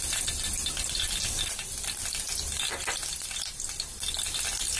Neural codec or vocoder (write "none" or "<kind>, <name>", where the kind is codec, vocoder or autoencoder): none